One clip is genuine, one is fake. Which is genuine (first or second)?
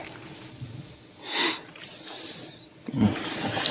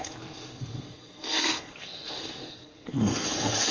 first